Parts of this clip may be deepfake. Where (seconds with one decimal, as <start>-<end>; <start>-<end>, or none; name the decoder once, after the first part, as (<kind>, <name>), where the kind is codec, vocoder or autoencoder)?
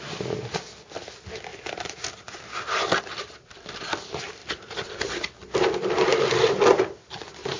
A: none